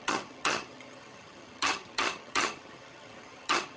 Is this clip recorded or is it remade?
remade